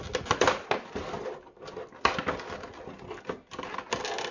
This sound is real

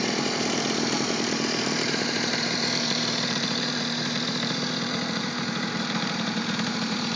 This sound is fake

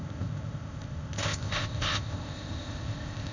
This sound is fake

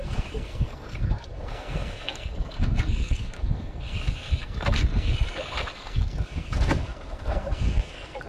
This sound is fake